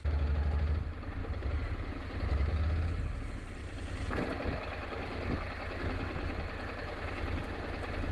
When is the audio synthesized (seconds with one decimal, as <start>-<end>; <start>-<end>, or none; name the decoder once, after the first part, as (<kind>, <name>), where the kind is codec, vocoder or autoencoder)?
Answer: none